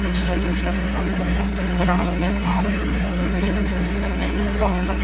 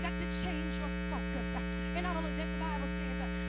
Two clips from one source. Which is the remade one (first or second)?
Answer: first